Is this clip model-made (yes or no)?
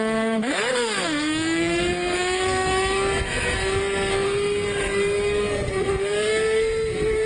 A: yes